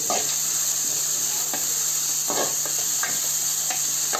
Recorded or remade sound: recorded